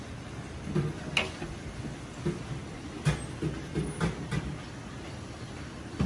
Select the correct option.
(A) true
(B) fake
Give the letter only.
A